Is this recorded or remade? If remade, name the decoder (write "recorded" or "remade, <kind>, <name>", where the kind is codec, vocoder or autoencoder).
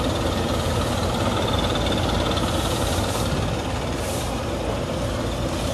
recorded